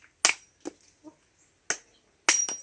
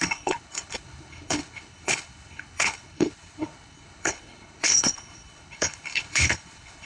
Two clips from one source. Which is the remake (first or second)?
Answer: second